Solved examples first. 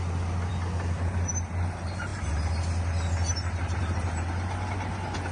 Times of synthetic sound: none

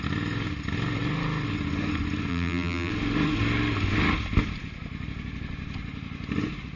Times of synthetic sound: 2.3-2.9